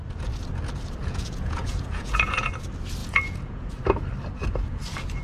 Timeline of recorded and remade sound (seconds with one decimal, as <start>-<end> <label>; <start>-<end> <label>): 0.0-1.0 recorded; 1.0-2.5 remade; 2.5-3.0 recorded; 3.0-3.7 remade; 3.7-5.2 recorded